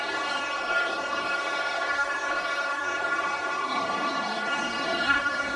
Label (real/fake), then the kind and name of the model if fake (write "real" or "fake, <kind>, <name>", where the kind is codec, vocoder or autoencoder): fake, codec, SNAC